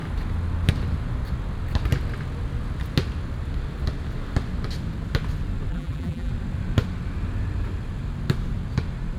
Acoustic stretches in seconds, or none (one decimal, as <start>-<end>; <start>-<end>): 0.0-5.7; 6.3-9.2

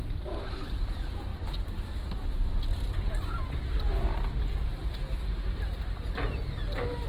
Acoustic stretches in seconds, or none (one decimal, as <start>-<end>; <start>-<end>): 1.3-2.1; 2.5-4.6

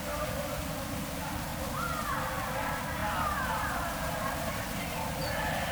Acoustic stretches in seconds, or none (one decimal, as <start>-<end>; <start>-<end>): 1.5-2.1

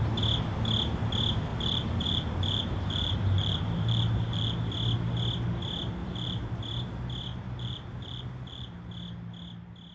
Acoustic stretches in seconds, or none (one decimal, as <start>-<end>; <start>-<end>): 0.0-1.5; 4.6-6.0; 6.6-7.3; 8.9-9.9